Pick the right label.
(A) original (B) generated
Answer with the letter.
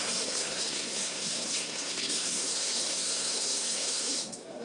B